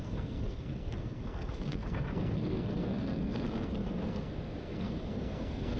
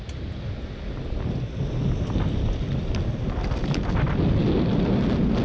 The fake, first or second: first